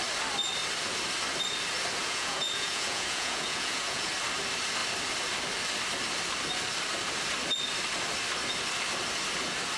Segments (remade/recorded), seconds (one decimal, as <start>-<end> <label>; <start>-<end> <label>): 0.0-2.0 recorded; 2.0-4.1 remade; 4.1-9.8 recorded